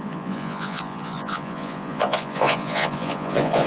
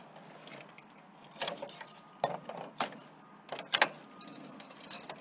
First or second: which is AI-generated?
first